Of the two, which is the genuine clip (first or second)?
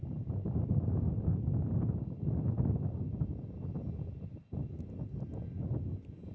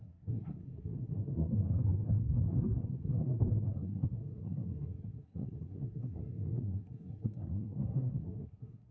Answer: first